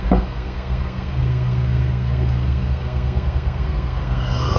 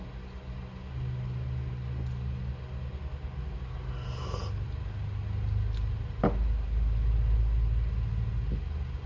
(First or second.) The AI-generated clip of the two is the first